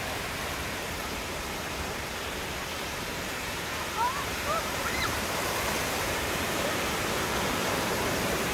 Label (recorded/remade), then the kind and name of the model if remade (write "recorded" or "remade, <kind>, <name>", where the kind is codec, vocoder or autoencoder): remade, vocoder, BigVGAN v2